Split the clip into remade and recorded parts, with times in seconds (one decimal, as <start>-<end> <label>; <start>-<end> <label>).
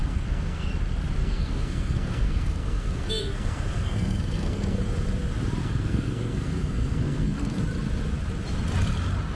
0.0-0.7 remade; 0.7-1.2 recorded; 1.2-4.8 remade; 4.8-5.6 recorded; 5.6-7.6 remade; 7.6-9.4 recorded